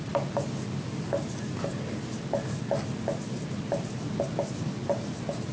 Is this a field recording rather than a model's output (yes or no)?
yes